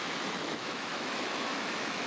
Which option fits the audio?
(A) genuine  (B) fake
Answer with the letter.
B